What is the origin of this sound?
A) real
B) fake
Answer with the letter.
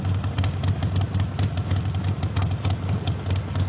A